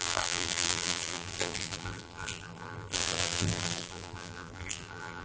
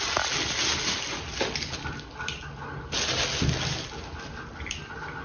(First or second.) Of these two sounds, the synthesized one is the first